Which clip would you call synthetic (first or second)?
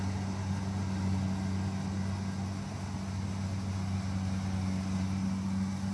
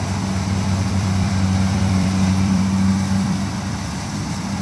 second